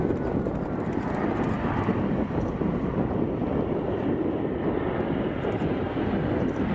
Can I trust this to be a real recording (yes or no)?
yes